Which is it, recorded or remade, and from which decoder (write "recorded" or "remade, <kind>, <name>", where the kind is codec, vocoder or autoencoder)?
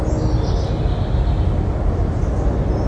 recorded